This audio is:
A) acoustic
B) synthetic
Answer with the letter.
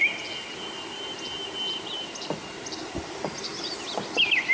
A